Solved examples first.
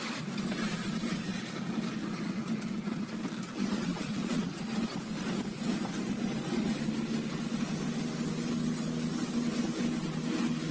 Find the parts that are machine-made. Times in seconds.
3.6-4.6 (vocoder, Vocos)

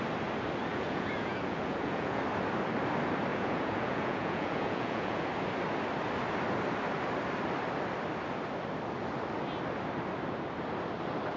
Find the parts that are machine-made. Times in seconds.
0.7-2.2 (vocoder, Vocos); 3.3-5.3

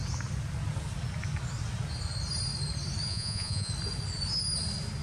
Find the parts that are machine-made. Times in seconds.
3.1-3.7 (vocoder, Vocos)

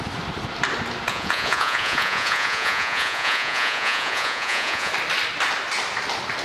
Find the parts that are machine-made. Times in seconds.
1.1-4.9 (vocoder, Vocos)

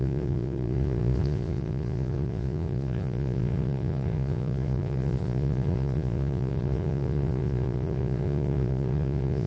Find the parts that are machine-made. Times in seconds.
0.0-9.5 (vocoder, Vocos)

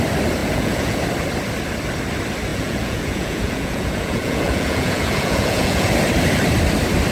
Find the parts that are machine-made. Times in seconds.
0.4-1.0 (vocoder, Vocos); 2.5-5.9

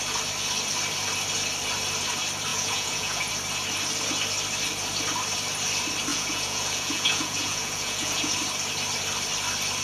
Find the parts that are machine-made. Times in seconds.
2.5-3.3 (vocoder, Vocos); 6.1-8.3

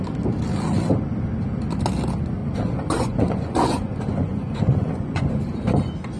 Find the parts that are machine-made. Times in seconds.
2.4-5.3 (vocoder, Vocos)